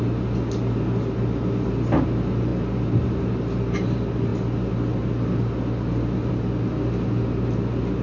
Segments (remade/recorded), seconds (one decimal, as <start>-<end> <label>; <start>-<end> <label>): 0.0-8.0 recorded